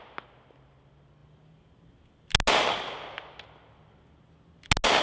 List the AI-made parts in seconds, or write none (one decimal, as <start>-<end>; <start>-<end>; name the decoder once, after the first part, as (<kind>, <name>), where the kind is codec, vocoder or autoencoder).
none